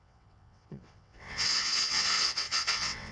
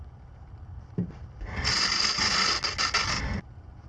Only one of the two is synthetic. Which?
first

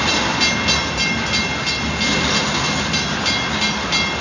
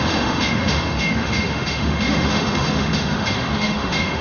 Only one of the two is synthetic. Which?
second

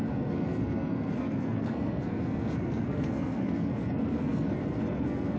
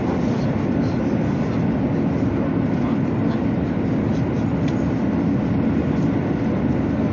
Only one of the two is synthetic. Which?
first